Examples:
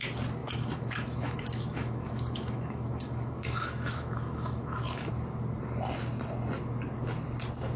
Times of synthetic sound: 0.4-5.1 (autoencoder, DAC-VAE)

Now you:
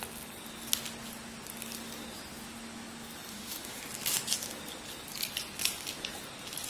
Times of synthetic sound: 3.3-3.8 (autoencoder, DAC-VAE)

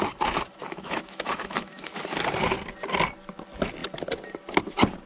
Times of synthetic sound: 0.6-2.0 (autoencoder, DAC-VAE)

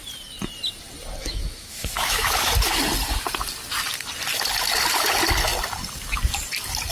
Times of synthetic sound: 1.2-2.5 (autoencoder, DAC-VAE)

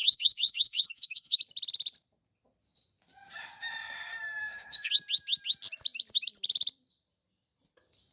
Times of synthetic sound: 0.0-1.4 (autoencoder, DAC-VAE); 4.4-4.9

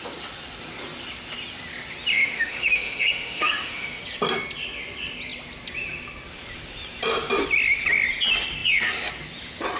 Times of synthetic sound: 2.1-4.0 (autoencoder, DAC-VAE)

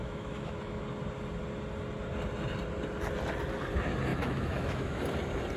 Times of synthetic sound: 0.0-0.8 (autoencoder, DAC-VAE); 4.1-5.0